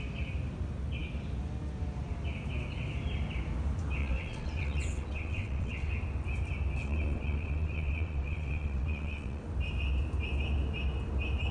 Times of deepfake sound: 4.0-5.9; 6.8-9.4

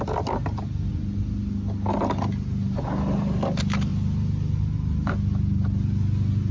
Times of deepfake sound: none